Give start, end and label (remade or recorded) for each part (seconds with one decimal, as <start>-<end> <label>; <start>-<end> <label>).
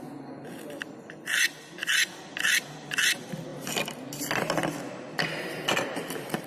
0.0-6.5 recorded